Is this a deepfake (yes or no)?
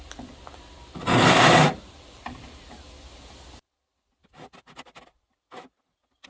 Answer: no